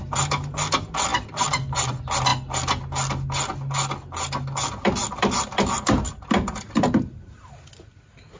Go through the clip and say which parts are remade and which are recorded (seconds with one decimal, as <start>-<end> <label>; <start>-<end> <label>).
0.0-8.4 recorded